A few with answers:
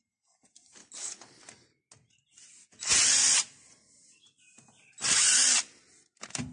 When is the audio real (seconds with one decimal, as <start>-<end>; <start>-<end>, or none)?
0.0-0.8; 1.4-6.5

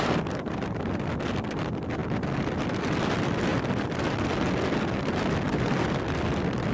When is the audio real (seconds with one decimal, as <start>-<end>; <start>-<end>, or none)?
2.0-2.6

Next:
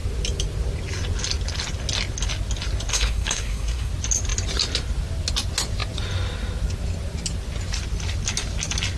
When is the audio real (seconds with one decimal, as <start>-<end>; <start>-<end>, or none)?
0.0-2.9; 3.9-9.0

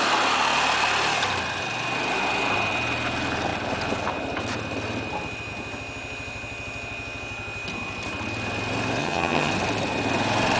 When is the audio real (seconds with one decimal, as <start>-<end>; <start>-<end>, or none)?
0.0-9.0; 9.5-10.6